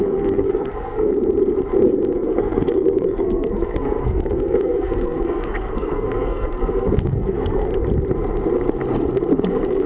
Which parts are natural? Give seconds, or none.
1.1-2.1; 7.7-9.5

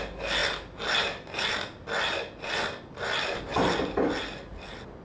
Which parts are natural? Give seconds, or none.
0.0-5.0

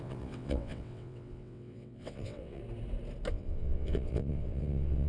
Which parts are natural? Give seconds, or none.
2.6-3.3

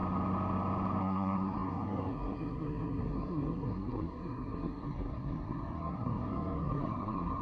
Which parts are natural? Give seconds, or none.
0.0-1.0

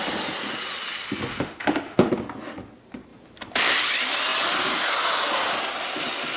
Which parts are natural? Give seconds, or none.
0.0-1.3; 2.1-6.4

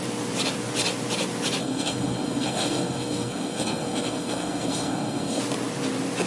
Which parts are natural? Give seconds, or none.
0.0-1.6; 5.4-6.3

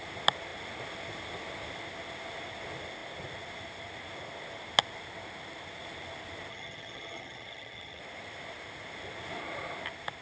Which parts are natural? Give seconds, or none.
0.0-6.5; 8.0-10.2